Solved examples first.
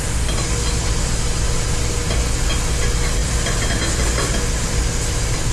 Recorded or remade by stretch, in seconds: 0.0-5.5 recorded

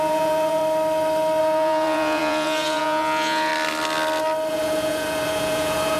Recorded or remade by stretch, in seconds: 0.0-0.6 remade; 0.6-1.4 recorded; 1.4-3.5 remade; 3.5-4.5 recorded; 4.5-6.0 remade